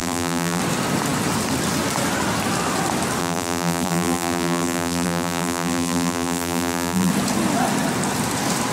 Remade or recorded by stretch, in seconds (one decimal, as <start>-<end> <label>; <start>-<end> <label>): 0.0-0.6 remade; 0.6-3.2 recorded; 3.2-7.1 remade; 7.1-8.7 recorded